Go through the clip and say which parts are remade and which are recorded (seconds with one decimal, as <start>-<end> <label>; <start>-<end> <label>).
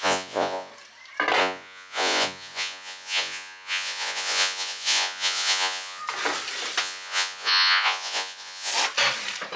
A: 0.0-0.7 remade; 0.7-1.4 recorded; 1.4-6.0 remade; 6.0-6.8 recorded; 6.8-8.7 remade; 8.7-9.6 recorded